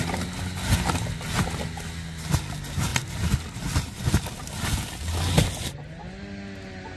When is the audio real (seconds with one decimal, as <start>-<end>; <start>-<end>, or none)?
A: 0.0-7.0